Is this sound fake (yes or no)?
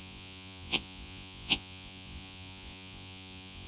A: yes